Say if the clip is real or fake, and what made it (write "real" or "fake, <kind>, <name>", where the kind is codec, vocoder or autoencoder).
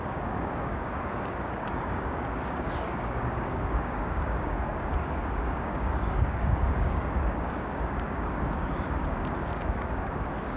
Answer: fake, codec, DAC